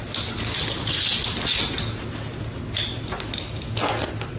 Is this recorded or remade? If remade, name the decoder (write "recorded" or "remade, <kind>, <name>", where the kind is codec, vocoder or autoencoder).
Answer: recorded